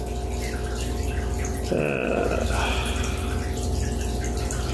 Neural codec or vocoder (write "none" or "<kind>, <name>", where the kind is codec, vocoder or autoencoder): none